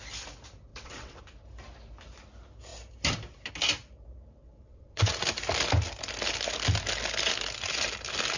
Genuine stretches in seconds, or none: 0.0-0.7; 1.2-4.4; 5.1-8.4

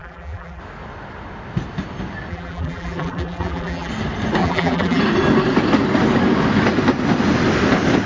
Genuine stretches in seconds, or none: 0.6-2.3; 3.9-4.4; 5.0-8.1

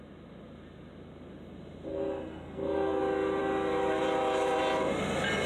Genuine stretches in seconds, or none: 0.0-1.9; 3.0-5.5

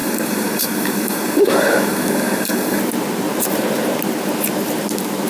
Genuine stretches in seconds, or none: 2.8-5.3

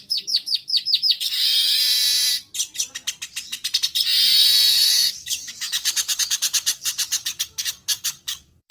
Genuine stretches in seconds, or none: 1.8-4.7